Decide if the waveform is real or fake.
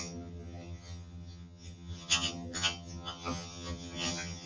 fake